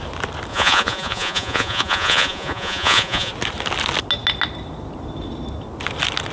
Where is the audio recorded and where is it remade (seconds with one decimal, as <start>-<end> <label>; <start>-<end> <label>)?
0.0-0.5 recorded; 0.5-3.3 remade; 3.3-6.3 recorded